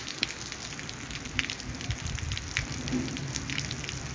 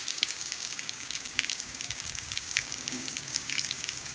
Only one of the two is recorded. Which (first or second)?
first